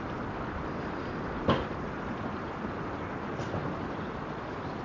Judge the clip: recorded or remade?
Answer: recorded